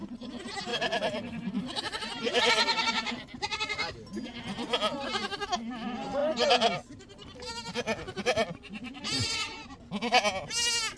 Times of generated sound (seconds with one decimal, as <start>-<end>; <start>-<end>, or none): 0.7-3.9